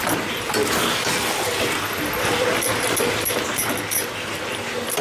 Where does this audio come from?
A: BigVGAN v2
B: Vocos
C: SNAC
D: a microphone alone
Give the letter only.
D